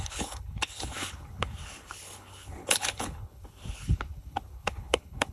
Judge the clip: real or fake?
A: fake